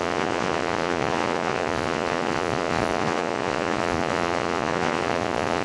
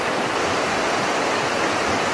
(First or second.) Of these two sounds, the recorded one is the second